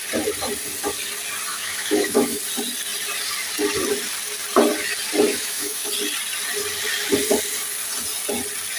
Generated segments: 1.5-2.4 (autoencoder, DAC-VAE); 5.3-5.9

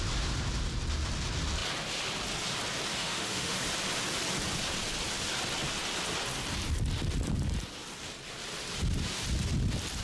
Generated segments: 2.9-3.6 (autoencoder, DAC-VAE)

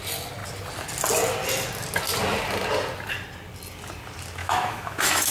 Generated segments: 4.4-5.3 (autoencoder, DAC-VAE)